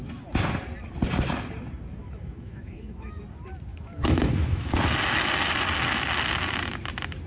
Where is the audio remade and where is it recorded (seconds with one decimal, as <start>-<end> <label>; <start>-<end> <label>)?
0.0-2.0 recorded; 2.0-3.2 remade; 3.2-3.7 recorded; 3.7-4.7 remade; 4.7-7.3 recorded

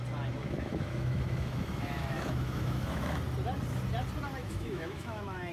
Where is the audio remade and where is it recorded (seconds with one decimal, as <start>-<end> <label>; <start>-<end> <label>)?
0.0-0.4 recorded; 0.4-3.2 remade; 3.2-4.4 recorded; 4.4-5.5 remade

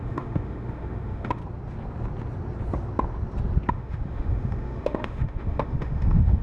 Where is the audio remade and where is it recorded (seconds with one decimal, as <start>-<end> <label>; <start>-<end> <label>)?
0.0-1.4 remade; 1.4-3.7 recorded; 3.7-6.4 remade

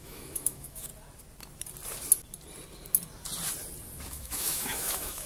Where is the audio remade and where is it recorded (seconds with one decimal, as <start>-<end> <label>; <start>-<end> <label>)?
0.0-0.9 remade; 0.9-4.1 recorded; 4.1-5.3 remade

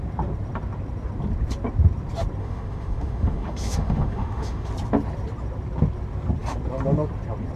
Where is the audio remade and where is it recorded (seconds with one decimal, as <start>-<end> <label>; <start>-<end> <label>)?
0.0-2.4 recorded; 2.4-4.7 remade; 4.7-7.6 recorded